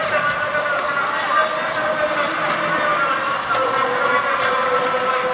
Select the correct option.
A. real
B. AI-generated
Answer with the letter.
A